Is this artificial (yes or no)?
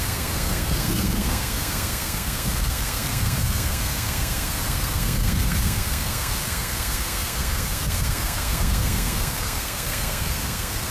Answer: yes